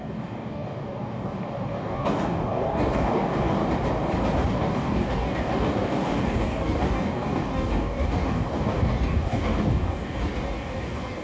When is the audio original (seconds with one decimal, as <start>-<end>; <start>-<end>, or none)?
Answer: 3.6-4.5